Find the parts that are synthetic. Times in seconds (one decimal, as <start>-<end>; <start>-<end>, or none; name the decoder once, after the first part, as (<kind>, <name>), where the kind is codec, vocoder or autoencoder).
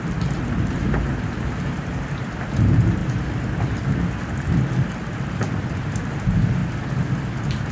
0.0-3.0 (vocoder, BigVGAN v2); 5.7-6.6; 7.1-7.7